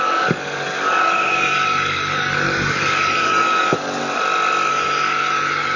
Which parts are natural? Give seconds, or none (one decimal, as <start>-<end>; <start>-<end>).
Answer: 4.0-4.7

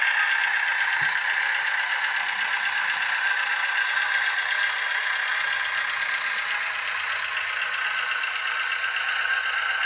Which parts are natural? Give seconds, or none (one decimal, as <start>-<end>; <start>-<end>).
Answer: 0.0-9.9

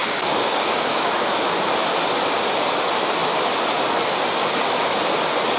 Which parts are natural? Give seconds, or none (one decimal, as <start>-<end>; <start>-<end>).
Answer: 1.3-5.6

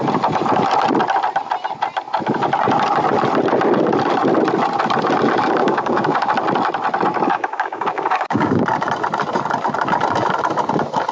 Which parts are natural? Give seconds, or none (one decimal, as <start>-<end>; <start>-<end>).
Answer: 0.0-5.6; 6.3-7.3; 8.6-11.1

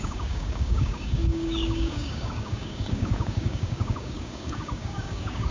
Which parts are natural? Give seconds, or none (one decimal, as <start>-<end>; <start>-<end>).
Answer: none

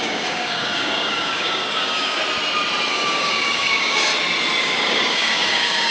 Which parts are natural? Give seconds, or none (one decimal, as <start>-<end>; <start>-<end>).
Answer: 2.2-2.9; 4.1-4.6